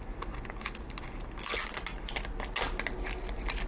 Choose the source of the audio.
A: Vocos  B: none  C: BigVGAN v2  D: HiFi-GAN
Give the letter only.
B